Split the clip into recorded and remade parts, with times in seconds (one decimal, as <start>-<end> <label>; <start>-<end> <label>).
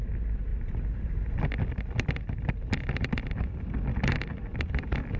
0.0-5.2 recorded